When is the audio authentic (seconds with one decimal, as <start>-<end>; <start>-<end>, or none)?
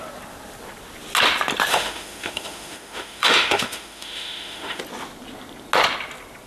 0.0-1.7; 4.8-6.5